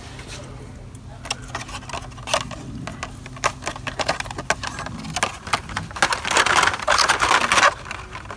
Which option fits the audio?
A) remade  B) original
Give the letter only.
B